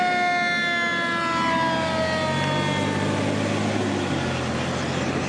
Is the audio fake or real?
real